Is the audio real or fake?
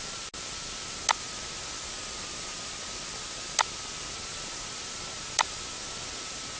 real